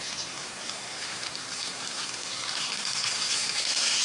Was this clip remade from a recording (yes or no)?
yes